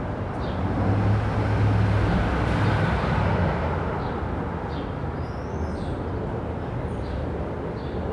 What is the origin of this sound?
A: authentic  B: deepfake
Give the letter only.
A